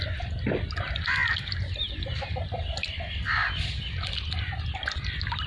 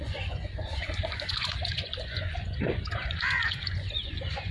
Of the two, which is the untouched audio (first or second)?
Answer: first